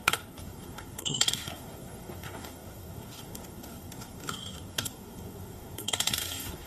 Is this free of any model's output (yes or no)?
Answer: no